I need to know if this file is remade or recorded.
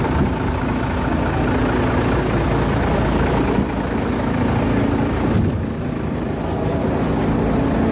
recorded